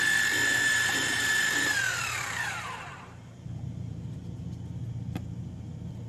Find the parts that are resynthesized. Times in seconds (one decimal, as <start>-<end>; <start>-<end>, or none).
0.5-4.2